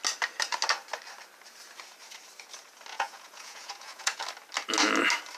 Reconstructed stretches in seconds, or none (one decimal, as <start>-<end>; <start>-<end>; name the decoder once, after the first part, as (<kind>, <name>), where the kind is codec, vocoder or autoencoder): 2.9-4.2 (vocoder, Vocos)